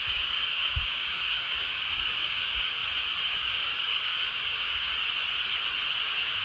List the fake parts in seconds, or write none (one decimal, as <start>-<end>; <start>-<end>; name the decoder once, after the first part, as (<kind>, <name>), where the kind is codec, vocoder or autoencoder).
0.0-2.8 (codec, DAC); 3.3-4.9; 6.0-6.4